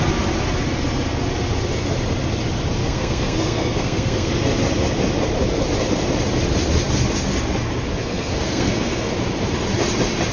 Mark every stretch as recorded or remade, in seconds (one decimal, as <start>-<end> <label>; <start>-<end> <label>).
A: 0.0-2.8 recorded; 2.8-4.3 remade; 4.3-8.0 recorded; 8.0-9.1 remade; 9.1-10.3 recorded